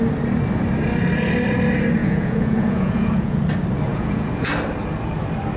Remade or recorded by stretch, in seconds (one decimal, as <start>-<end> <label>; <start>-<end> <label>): 0.0-2.0 recorded; 2.0-3.4 remade; 3.4-3.9 recorded; 3.9-4.5 remade; 4.5-5.6 recorded